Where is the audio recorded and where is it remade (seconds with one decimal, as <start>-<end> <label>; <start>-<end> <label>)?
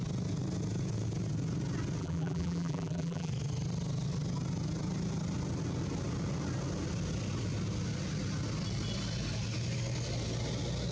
0.0-2.0 recorded; 2.0-3.3 remade; 3.3-10.9 recorded